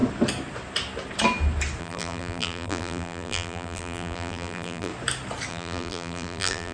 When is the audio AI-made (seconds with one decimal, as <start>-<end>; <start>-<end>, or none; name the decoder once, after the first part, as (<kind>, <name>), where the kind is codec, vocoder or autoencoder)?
1.8-4.9 (vocoder, BigVGAN v2); 5.5-6.7